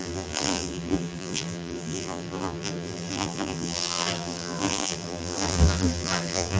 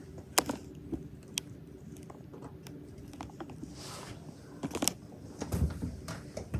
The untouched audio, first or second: second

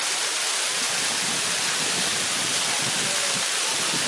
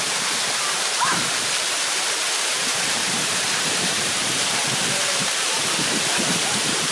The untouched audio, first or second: first